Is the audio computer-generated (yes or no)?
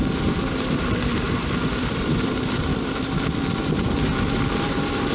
yes